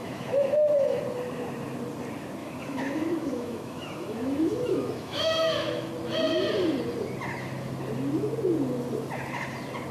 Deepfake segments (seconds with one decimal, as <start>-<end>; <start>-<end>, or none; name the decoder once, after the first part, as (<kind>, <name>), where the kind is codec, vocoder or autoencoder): 0.0-1.0 (autoencoder, DAC-VAE); 2.4-5.9